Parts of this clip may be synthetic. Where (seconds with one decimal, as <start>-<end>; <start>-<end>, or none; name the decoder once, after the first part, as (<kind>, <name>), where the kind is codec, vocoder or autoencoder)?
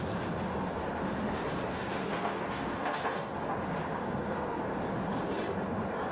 1.7-3.3 (codec, SNAC); 4.0-4.6